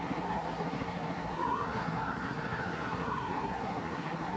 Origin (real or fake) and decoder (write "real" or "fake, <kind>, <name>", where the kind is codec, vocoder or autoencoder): fake, codec, SNAC